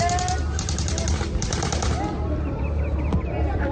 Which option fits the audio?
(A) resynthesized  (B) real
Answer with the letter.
B